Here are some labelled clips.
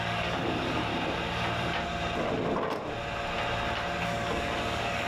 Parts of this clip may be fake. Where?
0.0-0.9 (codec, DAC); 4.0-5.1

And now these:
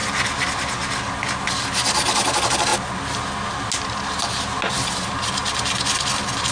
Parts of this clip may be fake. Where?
none

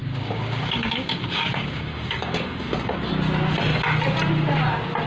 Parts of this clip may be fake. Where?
0.0-3.1 (codec, DAC)

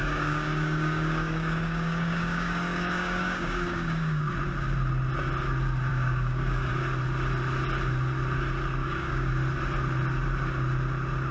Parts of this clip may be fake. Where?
0.0-4.3 (codec, DAC); 5.9-6.7; 8.8-9.3

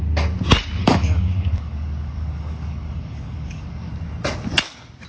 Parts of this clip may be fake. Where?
0.8-3.9 (codec, DAC)

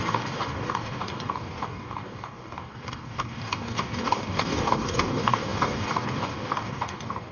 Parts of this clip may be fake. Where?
0.0-7.3 (codec, DAC)